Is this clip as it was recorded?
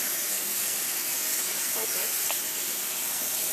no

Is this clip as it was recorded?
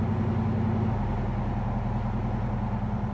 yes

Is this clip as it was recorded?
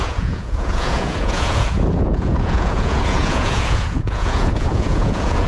no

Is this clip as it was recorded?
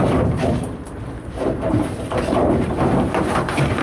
no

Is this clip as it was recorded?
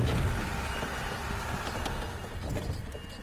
yes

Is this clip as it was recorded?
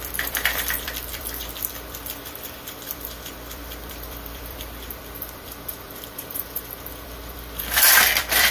no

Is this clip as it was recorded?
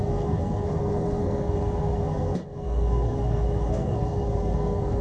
no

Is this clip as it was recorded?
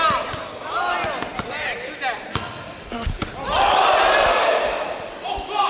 yes